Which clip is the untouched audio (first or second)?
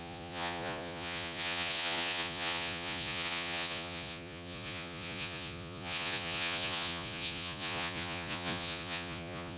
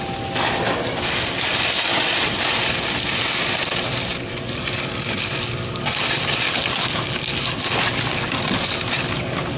second